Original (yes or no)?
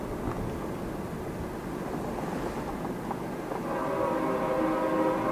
yes